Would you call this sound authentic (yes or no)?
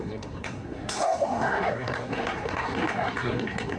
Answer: no